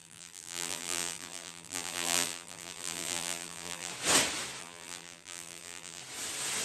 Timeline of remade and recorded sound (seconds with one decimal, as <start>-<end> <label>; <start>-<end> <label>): 0.0-3.9 remade; 3.9-4.6 recorded; 4.6-6.0 remade; 6.0-6.6 recorded